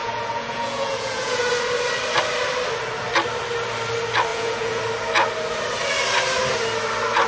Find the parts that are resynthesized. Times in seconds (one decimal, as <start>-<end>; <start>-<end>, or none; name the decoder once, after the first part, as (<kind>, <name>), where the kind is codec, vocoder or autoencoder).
0.0-1.5 (vocoder, Vocos); 4.3-4.8